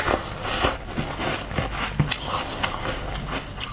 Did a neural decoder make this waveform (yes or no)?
no